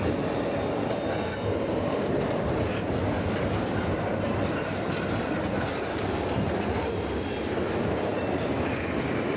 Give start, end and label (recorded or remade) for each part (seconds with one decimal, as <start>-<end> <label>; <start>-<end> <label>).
0.0-9.4 recorded